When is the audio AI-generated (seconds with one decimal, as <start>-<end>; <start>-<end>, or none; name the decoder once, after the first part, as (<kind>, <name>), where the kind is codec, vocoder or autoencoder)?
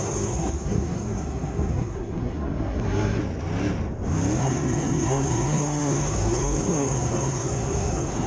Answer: 0.0-3.2 (codec, SNAC); 4.4-8.3